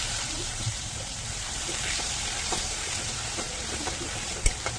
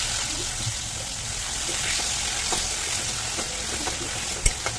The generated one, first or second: first